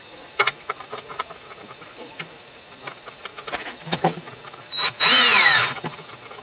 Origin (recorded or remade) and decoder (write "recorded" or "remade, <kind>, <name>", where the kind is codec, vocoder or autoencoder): remade, vocoder, Vocos